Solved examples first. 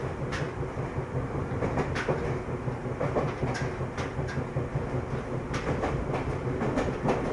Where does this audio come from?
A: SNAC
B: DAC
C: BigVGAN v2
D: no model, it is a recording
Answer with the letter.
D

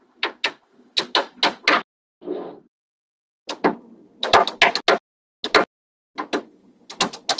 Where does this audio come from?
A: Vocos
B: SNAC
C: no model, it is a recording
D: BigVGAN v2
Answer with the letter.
C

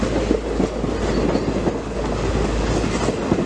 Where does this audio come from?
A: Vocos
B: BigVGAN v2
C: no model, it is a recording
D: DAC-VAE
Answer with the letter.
C